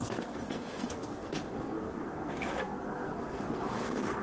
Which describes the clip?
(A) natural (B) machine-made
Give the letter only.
B